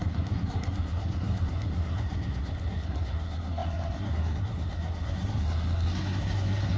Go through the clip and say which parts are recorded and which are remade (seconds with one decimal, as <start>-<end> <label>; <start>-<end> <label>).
0.0-6.8 remade